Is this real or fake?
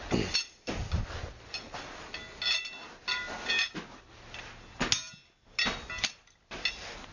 real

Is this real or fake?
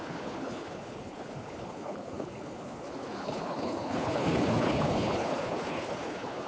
fake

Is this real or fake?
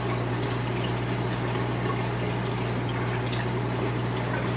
real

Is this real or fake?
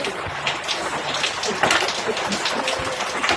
real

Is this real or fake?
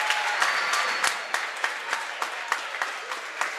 real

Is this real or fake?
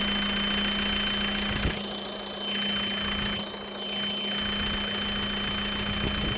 real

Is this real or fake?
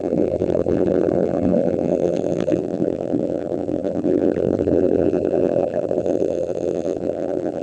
fake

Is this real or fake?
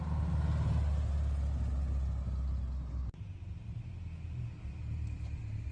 real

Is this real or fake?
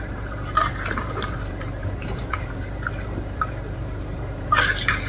fake